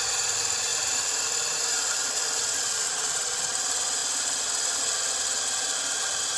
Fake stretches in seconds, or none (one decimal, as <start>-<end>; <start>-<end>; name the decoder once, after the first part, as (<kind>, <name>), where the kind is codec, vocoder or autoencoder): none